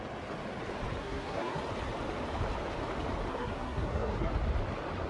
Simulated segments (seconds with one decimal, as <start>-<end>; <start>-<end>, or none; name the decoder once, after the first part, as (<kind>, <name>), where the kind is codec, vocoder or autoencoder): 1.0-1.6 (codec, SNAC); 3.3-4.3